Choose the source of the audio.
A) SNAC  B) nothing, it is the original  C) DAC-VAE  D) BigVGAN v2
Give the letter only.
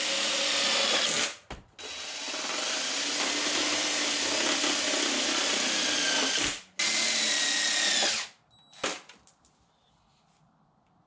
B